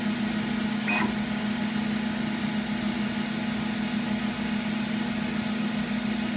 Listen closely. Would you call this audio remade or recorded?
recorded